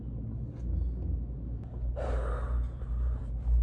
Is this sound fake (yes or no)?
no